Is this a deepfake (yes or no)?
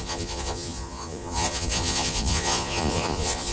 yes